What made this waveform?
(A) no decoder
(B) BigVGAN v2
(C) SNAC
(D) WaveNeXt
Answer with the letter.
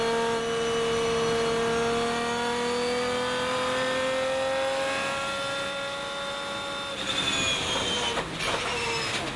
A